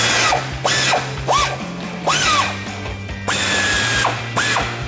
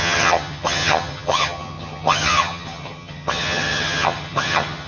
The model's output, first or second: second